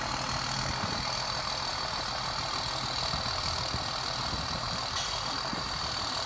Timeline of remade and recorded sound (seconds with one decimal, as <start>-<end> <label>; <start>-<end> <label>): 0.0-6.3 recorded